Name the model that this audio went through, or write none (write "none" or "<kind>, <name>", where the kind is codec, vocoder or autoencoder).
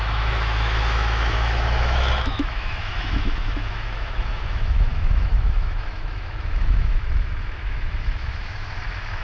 autoencoder, DAC-VAE